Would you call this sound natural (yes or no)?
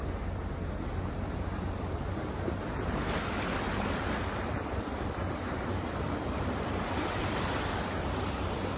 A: yes